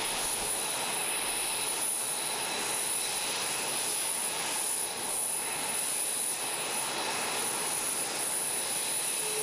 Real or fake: real